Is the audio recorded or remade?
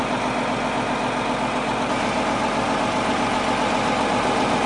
recorded